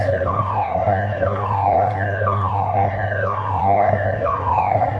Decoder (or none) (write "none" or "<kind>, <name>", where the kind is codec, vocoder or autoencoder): codec, SNAC